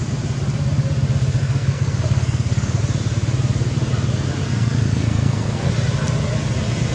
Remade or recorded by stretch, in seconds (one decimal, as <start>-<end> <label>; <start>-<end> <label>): 0.0-1.4 recorded; 1.4-2.8 remade; 2.8-4.4 recorded; 4.4-5.7 remade; 5.7-6.9 recorded